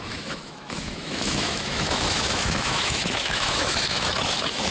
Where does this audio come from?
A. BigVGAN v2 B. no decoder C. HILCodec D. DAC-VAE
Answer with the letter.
D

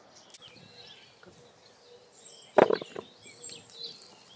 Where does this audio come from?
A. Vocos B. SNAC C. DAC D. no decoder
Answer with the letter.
D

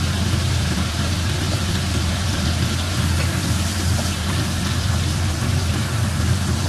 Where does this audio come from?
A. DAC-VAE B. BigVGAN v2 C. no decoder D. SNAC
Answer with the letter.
B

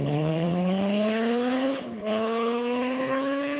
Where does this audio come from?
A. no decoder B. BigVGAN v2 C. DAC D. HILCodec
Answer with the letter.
D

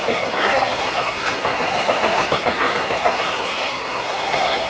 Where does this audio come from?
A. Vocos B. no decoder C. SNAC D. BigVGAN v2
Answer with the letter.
C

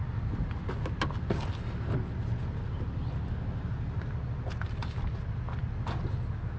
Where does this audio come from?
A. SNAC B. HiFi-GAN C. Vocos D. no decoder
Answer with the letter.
D